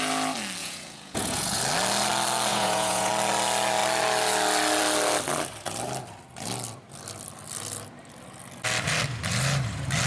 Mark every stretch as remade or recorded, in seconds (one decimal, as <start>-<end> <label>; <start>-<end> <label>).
0.0-0.6 recorded; 0.6-1.6 remade; 1.6-2.5 recorded; 2.5-3.1 remade; 3.1-10.1 recorded